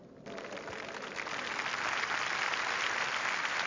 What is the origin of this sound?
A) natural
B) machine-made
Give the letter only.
A